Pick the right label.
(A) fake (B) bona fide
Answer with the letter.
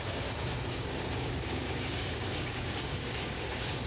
A